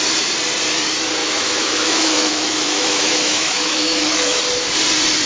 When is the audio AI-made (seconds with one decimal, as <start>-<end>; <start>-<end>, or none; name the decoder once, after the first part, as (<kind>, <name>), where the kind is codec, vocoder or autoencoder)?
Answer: 1.2-4.4 (autoencoder, DAC-VAE)